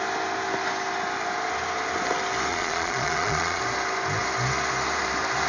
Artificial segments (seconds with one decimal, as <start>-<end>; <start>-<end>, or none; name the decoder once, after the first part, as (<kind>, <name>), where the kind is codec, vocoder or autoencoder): 2.5-3.6 (vocoder, Vocos)